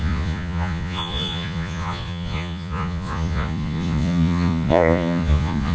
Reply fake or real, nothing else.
fake